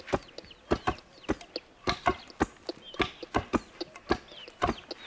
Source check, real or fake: real